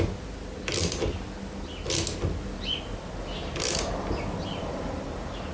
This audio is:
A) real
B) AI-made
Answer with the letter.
A